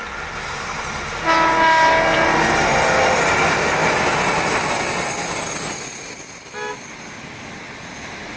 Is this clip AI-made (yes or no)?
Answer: no